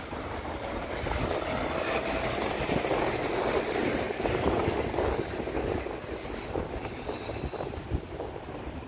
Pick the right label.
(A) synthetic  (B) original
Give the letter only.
B